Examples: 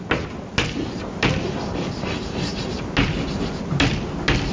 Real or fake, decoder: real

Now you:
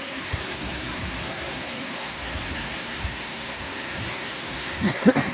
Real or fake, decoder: fake, codec, SNAC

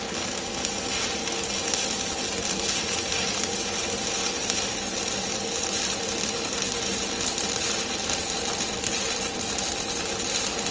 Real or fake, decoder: real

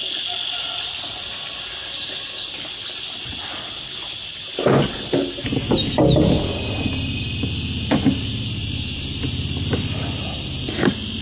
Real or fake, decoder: real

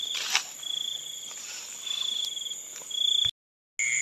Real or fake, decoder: real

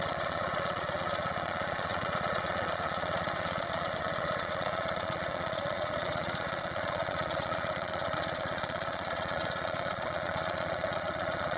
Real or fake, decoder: fake, vocoder, Vocos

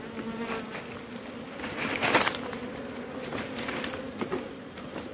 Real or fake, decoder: real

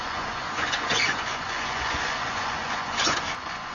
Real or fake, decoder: fake, vocoder, Vocos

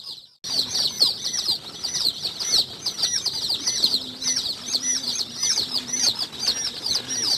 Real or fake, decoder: real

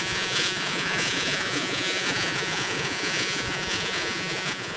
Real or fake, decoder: fake, vocoder, Vocos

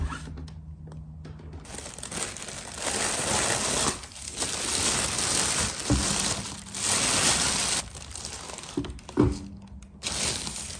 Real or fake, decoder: real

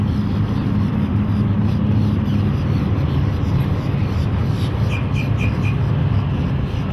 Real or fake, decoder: real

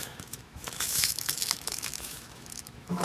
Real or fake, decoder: fake, autoencoder, DAC-VAE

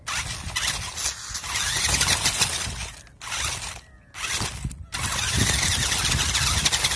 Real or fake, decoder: real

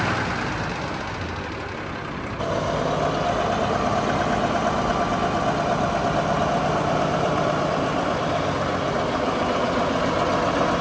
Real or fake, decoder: real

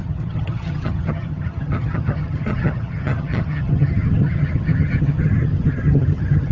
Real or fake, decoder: fake, vocoder, HiFi-GAN